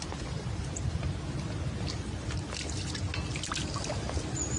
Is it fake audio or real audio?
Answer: real